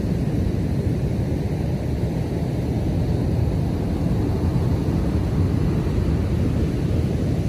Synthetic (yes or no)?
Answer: no